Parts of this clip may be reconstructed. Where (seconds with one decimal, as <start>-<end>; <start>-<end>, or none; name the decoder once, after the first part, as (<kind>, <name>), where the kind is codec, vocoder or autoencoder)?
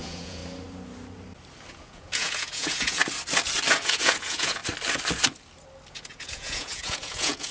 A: 0.0-0.4 (vocoder, Vocos); 1.7-3.0; 3.7-4.6; 5.9-7.5